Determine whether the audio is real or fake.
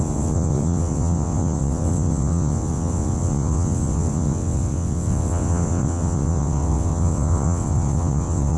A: fake